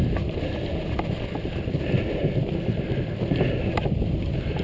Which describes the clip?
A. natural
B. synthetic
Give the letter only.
A